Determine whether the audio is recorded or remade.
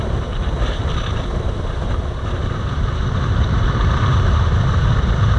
remade